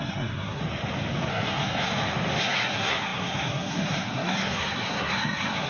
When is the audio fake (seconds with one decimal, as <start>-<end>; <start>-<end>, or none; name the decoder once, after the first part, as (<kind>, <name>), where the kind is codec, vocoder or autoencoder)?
0.0-0.6 (codec, SNAC); 1.3-1.9; 2.4-5.7